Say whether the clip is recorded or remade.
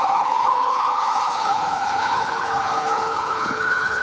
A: remade